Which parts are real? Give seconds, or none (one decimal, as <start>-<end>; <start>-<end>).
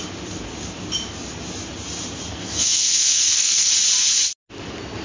0.0-2.3; 3.7-5.0